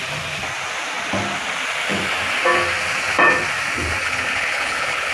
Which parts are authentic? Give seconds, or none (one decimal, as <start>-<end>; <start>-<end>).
0.0-4.0